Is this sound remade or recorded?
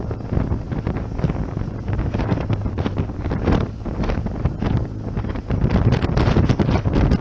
recorded